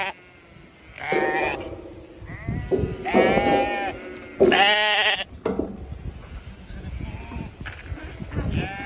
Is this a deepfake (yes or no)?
no